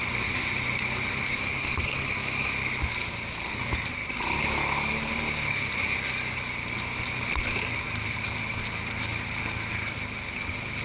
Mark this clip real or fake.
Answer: real